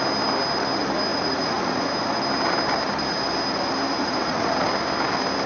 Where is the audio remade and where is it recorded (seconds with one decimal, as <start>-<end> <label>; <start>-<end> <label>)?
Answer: 0.0-1.1 recorded; 1.1-1.9 remade; 1.9-4.0 recorded; 4.0-4.7 remade; 4.7-5.5 recorded